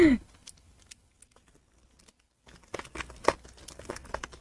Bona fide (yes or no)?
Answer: yes